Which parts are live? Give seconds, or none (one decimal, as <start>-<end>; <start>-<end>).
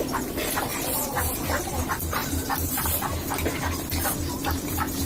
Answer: 0.0-2.2; 2.8-5.1